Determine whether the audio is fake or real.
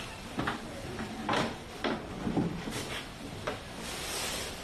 real